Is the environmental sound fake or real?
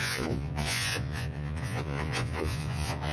fake